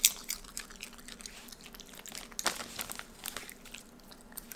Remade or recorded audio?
recorded